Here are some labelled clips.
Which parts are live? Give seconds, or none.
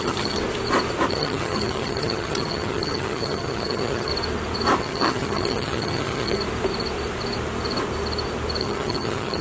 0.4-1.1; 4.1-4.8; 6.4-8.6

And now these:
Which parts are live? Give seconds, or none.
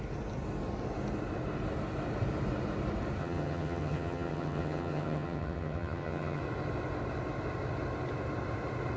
0.0-3.2; 6.4-9.0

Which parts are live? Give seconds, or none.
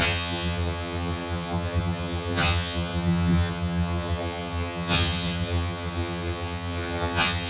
none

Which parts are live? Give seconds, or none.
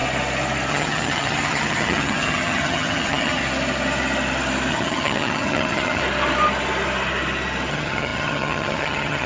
0.0-0.7; 3.4-4.7; 6.0-7.7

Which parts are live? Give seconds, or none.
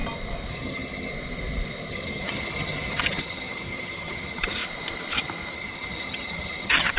0.0-0.5; 1.1-1.9; 4.6-5.5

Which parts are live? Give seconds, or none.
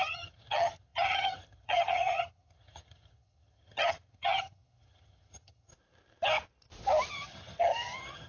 5.7-7.1